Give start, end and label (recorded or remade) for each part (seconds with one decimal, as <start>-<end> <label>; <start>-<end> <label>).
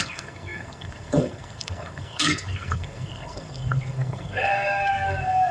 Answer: 0.0-5.5 remade